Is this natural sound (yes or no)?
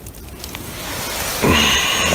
no